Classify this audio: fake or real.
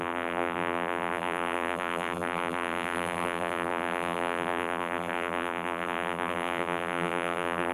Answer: fake